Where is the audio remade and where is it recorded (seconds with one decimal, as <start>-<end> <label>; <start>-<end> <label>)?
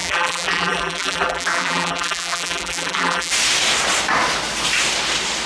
0.0-3.3 remade; 3.3-5.5 recorded